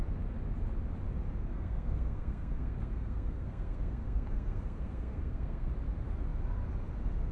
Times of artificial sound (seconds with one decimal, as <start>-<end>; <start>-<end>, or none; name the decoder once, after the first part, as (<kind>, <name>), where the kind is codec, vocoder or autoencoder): 1.4-5.7 (codec, SNAC)